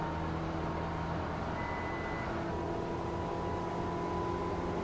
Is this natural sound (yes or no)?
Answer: yes